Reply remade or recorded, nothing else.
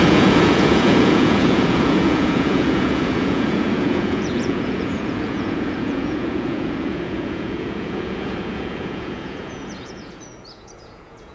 remade